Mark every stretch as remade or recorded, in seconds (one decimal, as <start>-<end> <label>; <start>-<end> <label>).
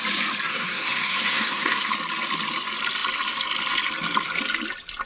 0.0-0.5 recorded; 0.5-1.9 remade; 1.9-5.1 recorded